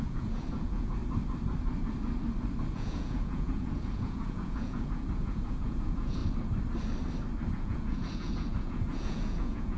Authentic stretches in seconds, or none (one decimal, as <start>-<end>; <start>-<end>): 1.0-2.7; 6.2-7.5